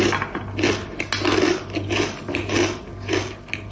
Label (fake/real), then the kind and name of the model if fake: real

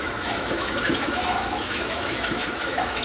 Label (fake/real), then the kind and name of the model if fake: fake, autoencoder, DAC-VAE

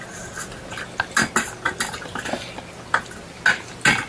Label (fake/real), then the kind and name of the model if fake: real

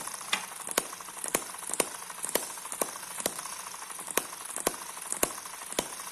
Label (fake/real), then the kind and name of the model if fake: real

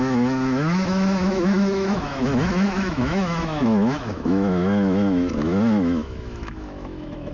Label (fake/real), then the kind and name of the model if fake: fake, autoencoder, DAC-VAE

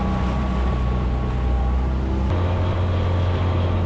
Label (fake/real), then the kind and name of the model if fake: real